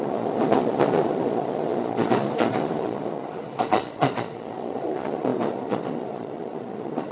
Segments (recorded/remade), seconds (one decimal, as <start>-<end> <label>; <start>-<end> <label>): 0.0-7.1 remade